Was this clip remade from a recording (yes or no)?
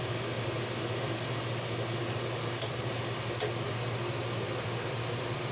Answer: no